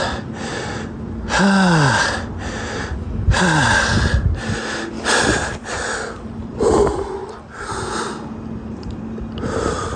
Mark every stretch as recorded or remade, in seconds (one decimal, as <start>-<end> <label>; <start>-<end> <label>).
0.0-10.0 recorded